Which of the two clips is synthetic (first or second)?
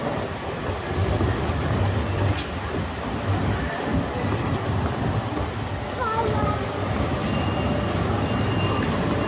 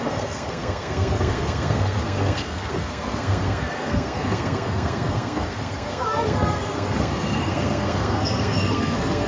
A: second